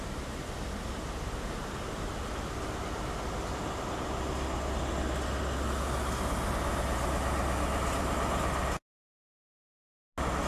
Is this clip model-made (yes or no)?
no